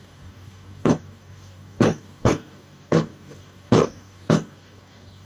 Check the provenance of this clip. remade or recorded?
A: remade